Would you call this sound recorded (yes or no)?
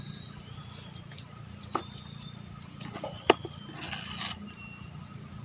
yes